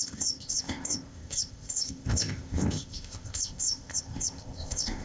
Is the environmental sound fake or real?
fake